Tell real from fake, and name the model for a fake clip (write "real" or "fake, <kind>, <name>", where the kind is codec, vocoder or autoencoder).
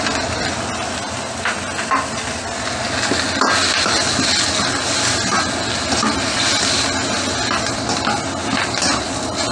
real